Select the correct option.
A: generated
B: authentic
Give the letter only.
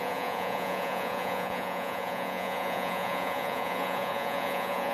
A